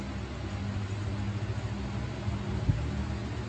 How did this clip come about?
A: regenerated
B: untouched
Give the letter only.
B